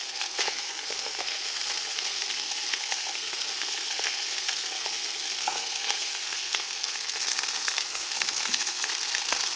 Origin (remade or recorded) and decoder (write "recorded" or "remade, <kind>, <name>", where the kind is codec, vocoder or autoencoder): remade, codec, SNAC